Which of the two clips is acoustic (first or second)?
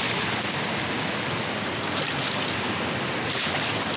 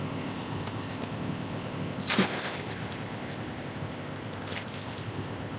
first